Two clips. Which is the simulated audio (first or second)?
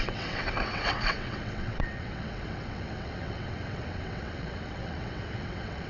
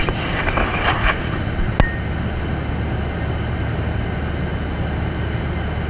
first